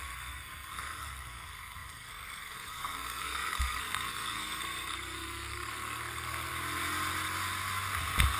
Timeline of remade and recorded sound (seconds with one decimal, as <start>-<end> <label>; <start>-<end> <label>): 0.0-6.5 remade; 6.5-8.4 recorded

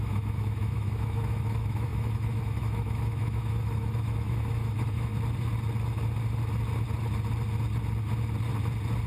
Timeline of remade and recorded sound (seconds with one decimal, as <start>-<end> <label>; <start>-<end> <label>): 0.0-5.1 remade; 5.1-9.1 recorded

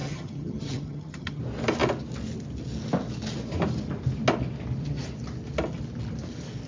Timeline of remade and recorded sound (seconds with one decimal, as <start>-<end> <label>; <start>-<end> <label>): 0.0-1.4 remade; 1.4-6.7 recorded

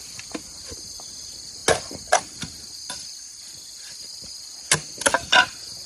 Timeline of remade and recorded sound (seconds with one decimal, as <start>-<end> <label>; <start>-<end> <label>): 0.0-5.9 recorded

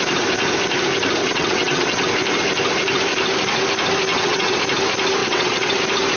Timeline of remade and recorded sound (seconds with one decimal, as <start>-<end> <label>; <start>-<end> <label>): 0.0-1.2 recorded; 1.2-2.0 remade; 2.0-4.1 recorded; 4.1-4.6 remade; 4.6-5.2 recorded; 5.2-5.8 remade; 5.8-6.2 recorded